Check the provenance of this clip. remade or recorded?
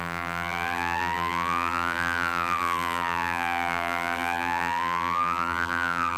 remade